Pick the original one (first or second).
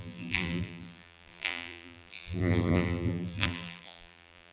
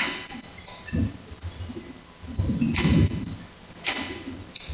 second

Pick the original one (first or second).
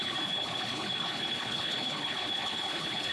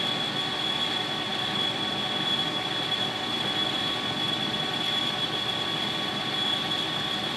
second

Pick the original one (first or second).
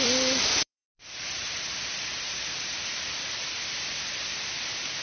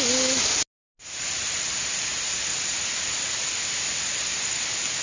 second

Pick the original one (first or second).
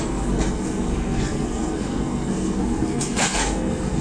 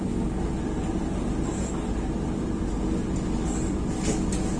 second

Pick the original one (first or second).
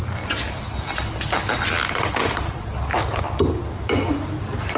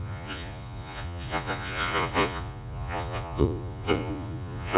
first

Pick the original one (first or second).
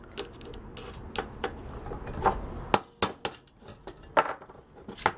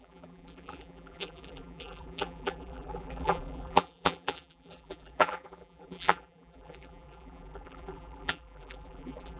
first